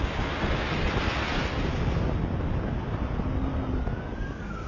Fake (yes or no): no